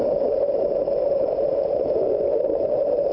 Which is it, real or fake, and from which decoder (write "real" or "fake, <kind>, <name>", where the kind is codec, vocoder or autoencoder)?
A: real